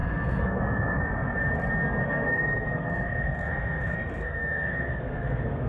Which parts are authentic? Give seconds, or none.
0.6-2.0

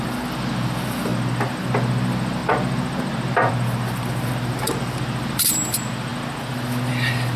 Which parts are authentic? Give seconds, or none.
0.0-7.4

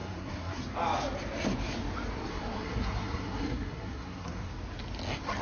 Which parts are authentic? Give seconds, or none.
0.6-2.3; 4.5-5.4